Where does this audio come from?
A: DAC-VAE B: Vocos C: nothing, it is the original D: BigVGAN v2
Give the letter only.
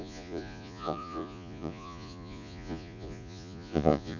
B